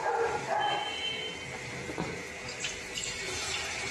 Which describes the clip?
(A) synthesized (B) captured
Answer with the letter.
A